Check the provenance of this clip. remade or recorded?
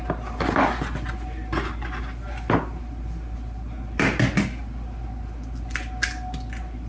recorded